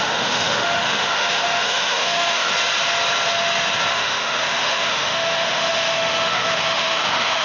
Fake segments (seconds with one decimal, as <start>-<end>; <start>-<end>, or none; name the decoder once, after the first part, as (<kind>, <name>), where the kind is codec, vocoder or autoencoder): 0.0-2.5 (autoencoder, DAC-VAE); 3.9-7.4